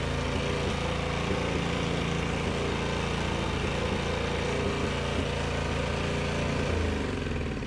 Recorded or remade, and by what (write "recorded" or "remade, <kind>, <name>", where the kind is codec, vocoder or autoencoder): recorded